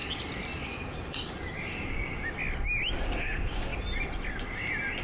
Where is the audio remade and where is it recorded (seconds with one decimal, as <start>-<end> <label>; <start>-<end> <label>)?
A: 0.0-3.0 recorded; 3.0-3.7 remade; 3.7-5.0 recorded